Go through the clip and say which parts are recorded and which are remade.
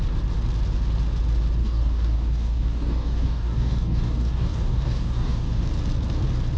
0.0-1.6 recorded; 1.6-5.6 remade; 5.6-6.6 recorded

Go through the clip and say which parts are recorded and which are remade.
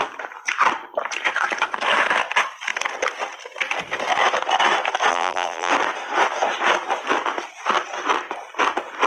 0.0-5.1 recorded; 5.1-5.7 remade; 5.7-9.1 recorded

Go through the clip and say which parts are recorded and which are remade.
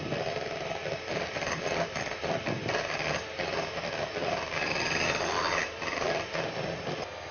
0.0-7.3 remade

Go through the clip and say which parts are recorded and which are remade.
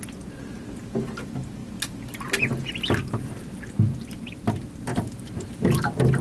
0.0-4.9 recorded; 4.9-6.2 remade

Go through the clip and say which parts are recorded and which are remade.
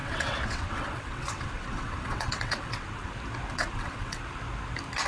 0.0-3.1 remade; 3.1-3.5 recorded; 3.5-4.2 remade; 4.2-5.1 recorded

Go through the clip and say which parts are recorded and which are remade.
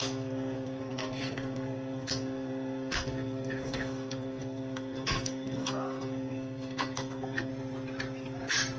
0.0-7.5 remade; 7.5-8.8 recorded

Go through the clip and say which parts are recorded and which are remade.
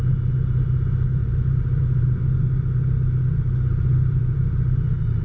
0.0-1.2 recorded; 1.2-2.2 remade; 2.2-3.7 recorded; 3.7-4.4 remade; 4.4-5.2 recorded